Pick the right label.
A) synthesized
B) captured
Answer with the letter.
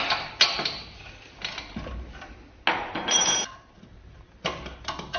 B